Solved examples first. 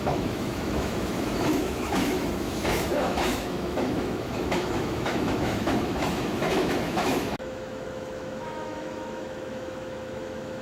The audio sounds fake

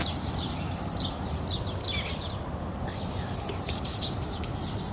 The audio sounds real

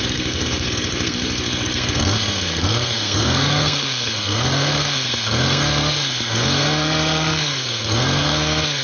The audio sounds fake